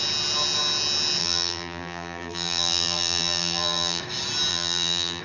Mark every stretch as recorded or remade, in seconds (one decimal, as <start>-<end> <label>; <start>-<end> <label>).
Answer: 0.0-1.2 recorded; 1.2-4.0 remade; 4.0-4.5 recorded; 4.5-5.2 remade